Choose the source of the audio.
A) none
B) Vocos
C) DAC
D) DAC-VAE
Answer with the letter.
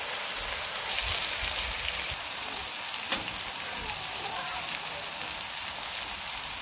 A